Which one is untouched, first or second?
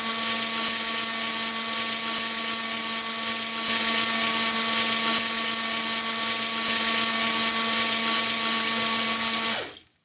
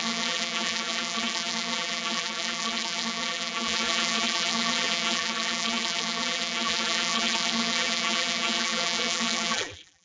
first